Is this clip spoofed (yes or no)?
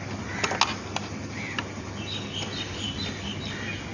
no